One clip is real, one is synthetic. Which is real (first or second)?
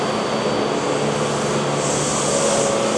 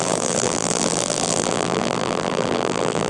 first